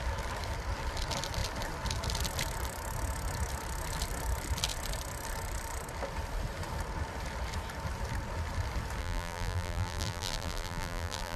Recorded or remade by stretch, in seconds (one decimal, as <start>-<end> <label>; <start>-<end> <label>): 0.0-9.0 recorded; 9.0-11.4 remade